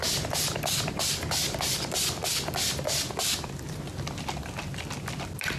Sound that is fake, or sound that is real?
real